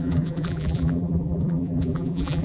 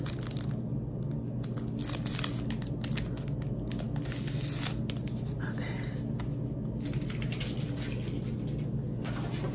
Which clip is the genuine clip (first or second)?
second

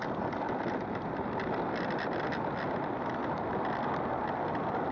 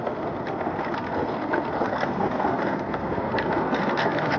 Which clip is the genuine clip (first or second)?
first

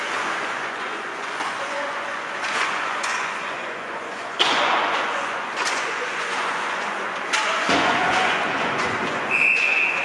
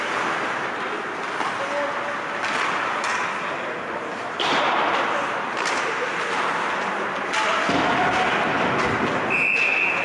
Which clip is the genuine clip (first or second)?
second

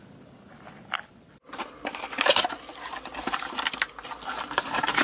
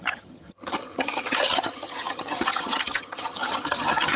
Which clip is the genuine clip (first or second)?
first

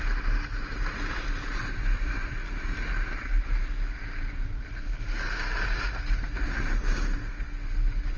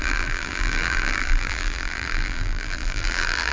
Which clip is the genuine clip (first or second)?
first